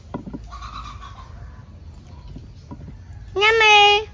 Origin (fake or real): real